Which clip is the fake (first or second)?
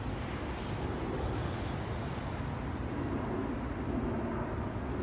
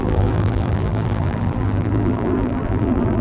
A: second